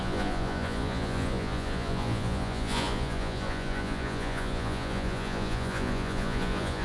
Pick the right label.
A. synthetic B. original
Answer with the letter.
A